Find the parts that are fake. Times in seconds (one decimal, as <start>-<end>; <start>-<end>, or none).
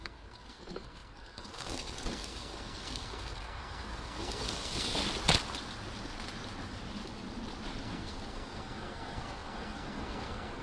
0.0-5.0; 7.8-10.6